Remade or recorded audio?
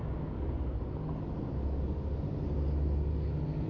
recorded